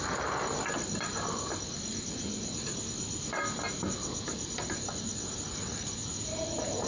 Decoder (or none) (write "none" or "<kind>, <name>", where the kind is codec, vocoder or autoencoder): none